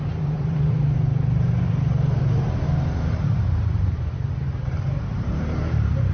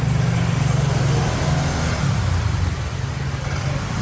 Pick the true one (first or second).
second